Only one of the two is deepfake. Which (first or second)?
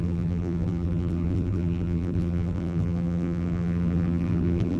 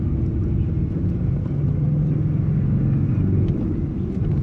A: first